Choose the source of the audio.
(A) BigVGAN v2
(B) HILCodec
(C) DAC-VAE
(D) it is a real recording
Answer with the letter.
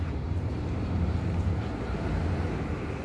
A